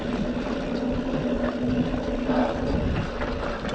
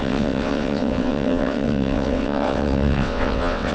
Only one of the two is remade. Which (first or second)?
second